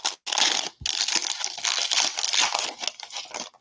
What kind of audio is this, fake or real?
real